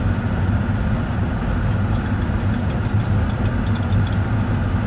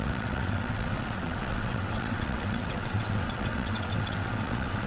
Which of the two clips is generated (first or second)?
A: second